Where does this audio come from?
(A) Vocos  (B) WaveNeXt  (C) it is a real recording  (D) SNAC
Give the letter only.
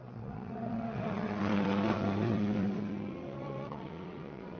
B